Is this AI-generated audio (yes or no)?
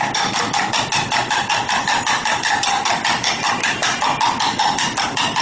no